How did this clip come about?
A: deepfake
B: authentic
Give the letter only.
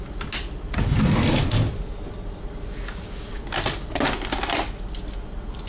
B